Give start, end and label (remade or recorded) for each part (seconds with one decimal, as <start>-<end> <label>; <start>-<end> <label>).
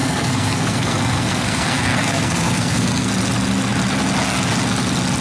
0.0-3.1 remade; 3.1-5.2 recorded